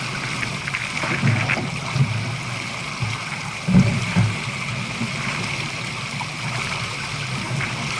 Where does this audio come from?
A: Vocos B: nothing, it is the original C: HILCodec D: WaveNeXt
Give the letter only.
B